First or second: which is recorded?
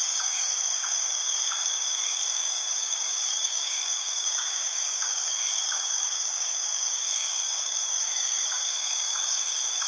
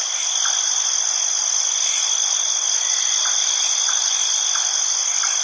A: second